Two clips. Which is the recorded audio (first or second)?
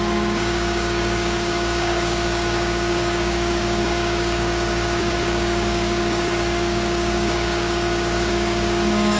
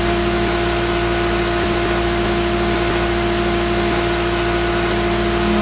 second